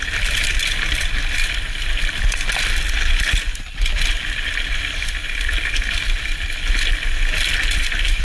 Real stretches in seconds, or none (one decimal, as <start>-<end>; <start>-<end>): 0.0-8.2